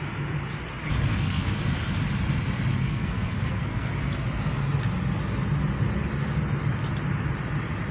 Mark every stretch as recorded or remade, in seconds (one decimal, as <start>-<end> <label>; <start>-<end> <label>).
0.0-1.1 recorded; 1.1-1.6 remade; 1.6-2.7 recorded; 2.7-3.9 remade; 3.9-7.9 recorded